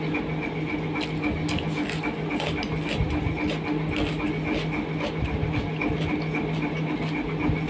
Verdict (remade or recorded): recorded